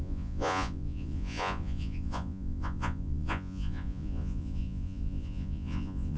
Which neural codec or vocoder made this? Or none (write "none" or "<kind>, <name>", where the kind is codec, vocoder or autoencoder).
vocoder, Vocos